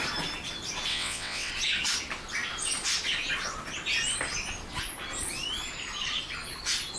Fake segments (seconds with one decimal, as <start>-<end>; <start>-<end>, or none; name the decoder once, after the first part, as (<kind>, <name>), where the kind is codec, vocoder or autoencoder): 0.9-1.5 (vocoder, WaveNeXt)